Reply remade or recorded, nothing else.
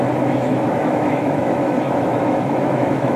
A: remade